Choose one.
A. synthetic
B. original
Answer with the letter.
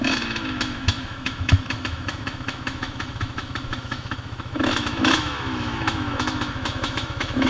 A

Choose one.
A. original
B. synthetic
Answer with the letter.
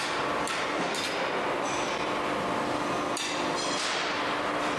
A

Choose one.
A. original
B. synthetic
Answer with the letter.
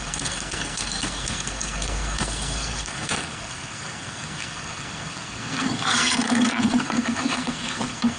B